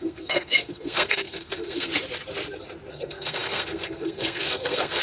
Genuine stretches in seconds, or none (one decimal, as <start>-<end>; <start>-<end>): 1.9-2.9